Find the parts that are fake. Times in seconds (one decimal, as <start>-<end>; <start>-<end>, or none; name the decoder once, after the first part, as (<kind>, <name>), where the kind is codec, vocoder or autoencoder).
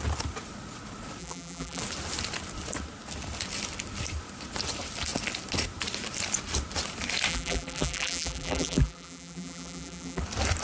1.2-1.8 (vocoder, BigVGAN v2); 7.3-10.2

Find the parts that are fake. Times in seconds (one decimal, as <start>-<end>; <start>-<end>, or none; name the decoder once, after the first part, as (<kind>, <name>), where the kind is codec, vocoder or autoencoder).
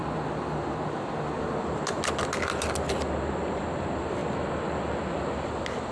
3.5-4.2 (vocoder, BigVGAN v2)